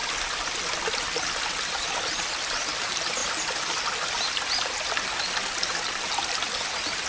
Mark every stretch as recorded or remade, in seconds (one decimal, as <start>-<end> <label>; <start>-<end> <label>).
0.0-7.1 recorded